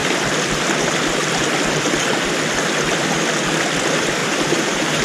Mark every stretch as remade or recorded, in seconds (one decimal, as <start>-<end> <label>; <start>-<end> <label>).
0.0-4.2 recorded; 4.2-5.0 remade